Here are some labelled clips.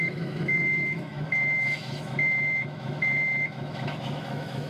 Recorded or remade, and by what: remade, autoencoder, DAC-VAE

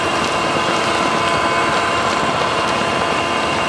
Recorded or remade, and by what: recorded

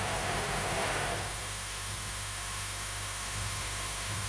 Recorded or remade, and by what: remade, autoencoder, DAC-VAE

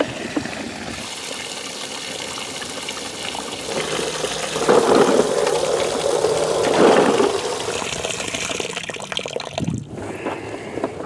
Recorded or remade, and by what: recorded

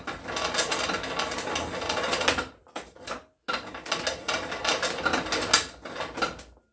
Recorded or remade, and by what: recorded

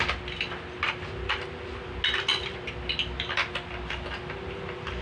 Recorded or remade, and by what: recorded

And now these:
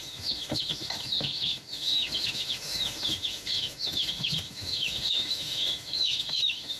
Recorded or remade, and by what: remade, autoencoder, DAC-VAE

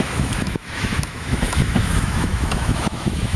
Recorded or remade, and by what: remade, autoencoder, DAC-VAE